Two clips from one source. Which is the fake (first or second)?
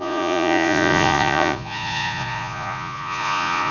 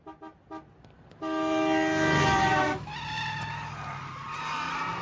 first